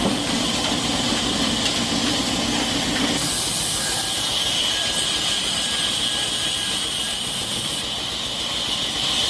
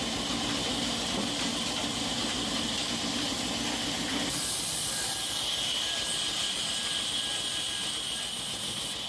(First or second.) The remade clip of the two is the first